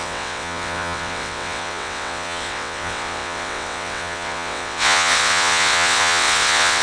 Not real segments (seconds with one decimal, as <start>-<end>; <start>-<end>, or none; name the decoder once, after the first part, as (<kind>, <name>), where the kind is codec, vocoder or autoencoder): 0.0-6.8 (vocoder, WaveNeXt)